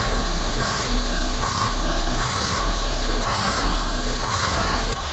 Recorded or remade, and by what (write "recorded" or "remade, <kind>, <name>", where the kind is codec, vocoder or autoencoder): remade, codec, SNAC